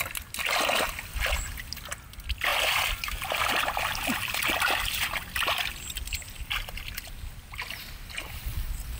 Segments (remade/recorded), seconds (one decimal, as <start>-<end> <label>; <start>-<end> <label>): 0.0-2.5 recorded; 2.5-6.5 remade; 6.5-9.0 recorded